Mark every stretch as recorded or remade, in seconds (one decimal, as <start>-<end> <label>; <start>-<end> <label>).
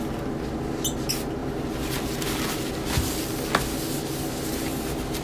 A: 0.0-5.2 recorded